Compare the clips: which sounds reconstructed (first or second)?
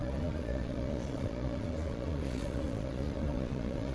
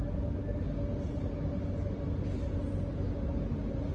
first